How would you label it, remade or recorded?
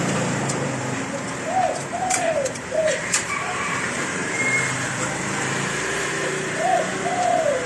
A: remade